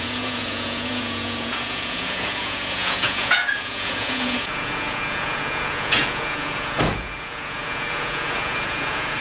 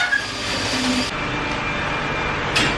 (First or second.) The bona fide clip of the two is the second